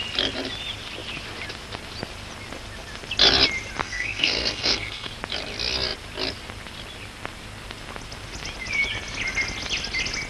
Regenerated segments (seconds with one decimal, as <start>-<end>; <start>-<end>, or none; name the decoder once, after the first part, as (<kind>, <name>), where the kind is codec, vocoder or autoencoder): 3.8-5.1 (codec, SNAC)